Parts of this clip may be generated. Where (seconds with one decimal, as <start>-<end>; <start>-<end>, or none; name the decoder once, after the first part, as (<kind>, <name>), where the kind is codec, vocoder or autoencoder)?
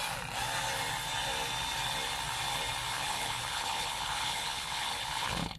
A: 2.9-5.6 (codec, HILCodec)